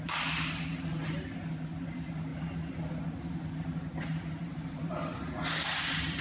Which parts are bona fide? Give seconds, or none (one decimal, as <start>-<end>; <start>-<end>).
0.0-6.2